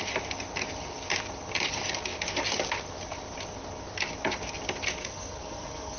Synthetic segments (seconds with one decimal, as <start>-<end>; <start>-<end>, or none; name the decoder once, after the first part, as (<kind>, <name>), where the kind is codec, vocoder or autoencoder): 5.0-6.0 (codec, SNAC)